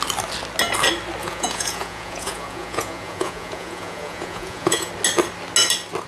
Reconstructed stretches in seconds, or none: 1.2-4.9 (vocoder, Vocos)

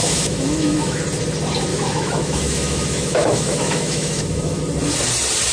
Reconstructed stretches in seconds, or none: 0.0-1.0 (autoencoder, DAC-VAE); 1.7-4.6

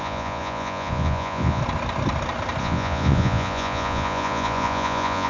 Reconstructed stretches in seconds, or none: 0.0-1.6 (vocoder, Vocos); 2.6-5.3